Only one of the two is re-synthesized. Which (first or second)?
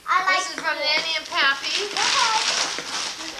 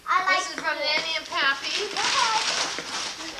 second